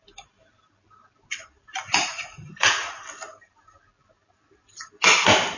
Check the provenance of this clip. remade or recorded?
recorded